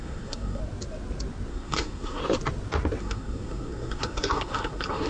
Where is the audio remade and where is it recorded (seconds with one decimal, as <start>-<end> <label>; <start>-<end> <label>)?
0.0-0.6 remade; 0.6-1.5 recorded; 1.5-2.2 remade; 2.2-3.0 recorded; 3.0-5.1 remade